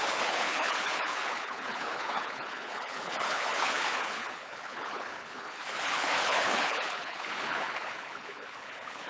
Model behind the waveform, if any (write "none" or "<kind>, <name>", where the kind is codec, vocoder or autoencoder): codec, HILCodec